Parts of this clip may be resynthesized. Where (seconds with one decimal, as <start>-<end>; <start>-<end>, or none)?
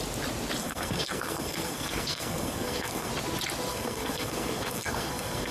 0.6-3.1; 3.7-5.5